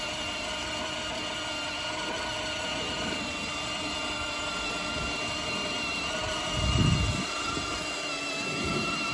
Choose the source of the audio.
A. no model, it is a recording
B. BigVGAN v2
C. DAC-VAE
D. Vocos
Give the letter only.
A